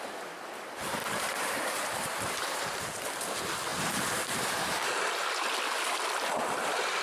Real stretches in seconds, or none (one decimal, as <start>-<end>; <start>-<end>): 0.0-1.0; 2.8-7.0